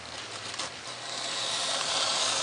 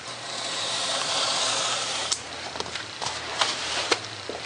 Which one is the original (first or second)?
first